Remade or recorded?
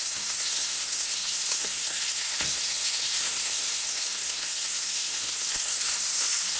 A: remade